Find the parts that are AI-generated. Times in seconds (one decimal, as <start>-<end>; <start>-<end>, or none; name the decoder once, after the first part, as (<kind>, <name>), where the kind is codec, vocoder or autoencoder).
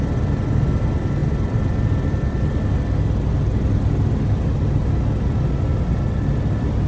1.2-2.1 (vocoder, BigVGAN v2)